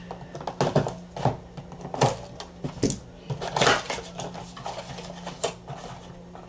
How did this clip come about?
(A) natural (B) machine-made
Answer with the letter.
A